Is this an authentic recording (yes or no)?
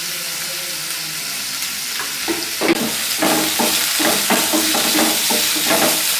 yes